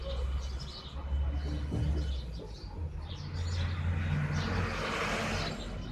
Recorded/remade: recorded